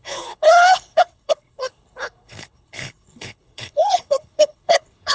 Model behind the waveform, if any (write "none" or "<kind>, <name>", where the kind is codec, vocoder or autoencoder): codec, HILCodec